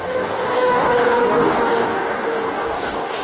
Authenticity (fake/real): fake